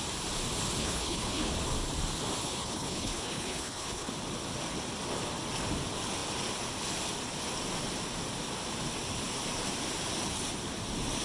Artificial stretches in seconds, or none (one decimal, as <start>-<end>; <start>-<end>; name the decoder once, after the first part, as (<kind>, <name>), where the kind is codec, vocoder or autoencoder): 0.8-1.5 (codec, HILCodec); 2.4-4.1